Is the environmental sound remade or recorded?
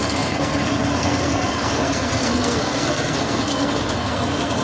remade